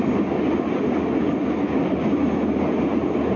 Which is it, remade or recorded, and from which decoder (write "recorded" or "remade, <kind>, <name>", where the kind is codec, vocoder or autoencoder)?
recorded